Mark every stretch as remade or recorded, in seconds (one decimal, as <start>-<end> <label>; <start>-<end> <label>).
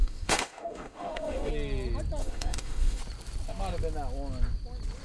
0.0-1.5 remade; 1.5-2.2 recorded; 2.2-3.0 remade; 3.0-5.0 recorded